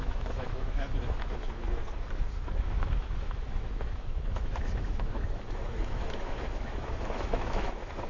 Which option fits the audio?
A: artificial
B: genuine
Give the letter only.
A